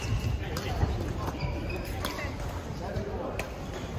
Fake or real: real